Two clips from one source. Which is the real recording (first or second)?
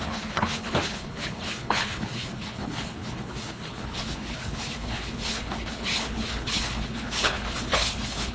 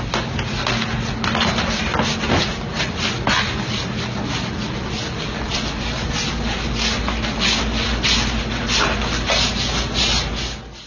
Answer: second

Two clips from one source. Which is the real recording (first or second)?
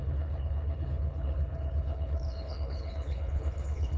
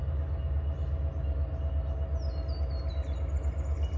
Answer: second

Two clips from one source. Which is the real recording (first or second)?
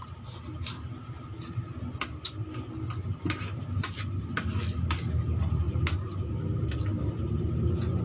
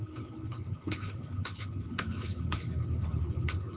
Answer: first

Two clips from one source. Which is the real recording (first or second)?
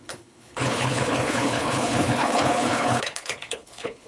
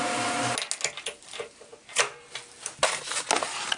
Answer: second